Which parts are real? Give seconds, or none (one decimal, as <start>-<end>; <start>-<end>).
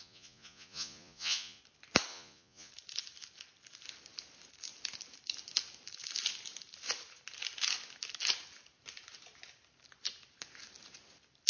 1.6-2.1; 2.7-11.5